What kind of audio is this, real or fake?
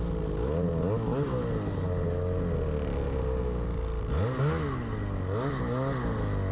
real